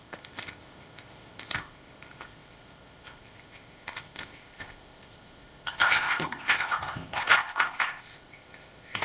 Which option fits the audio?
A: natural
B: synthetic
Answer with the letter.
B